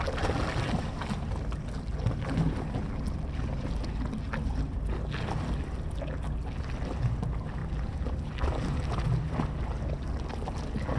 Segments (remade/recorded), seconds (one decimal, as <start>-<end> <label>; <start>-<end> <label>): 0.0-11.0 recorded